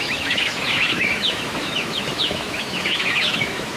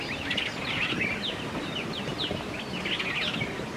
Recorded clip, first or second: second